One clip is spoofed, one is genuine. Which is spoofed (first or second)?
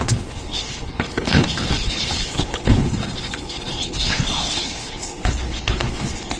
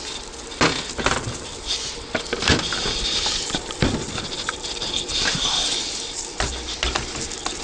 first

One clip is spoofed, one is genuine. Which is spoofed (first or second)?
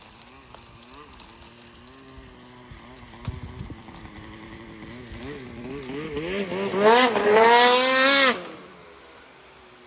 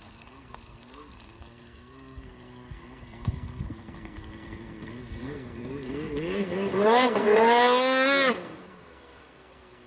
second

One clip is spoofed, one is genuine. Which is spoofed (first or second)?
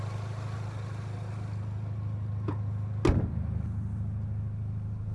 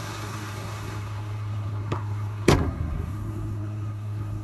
second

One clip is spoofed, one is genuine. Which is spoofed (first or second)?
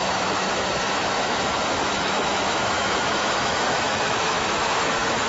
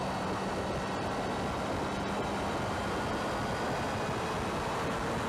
first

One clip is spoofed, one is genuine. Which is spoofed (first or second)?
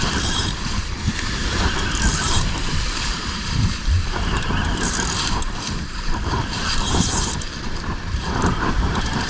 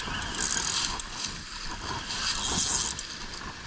first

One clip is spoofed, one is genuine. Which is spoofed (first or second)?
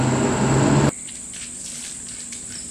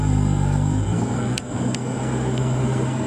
second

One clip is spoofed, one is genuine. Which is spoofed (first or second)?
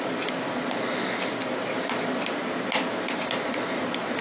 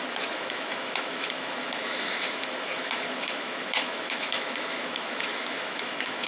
second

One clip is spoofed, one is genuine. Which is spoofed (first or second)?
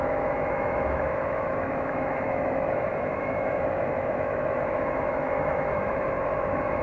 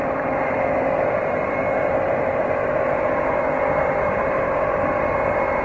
first